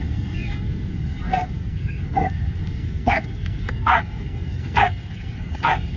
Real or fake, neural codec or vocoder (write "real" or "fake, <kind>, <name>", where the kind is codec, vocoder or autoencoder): fake, codec, SNAC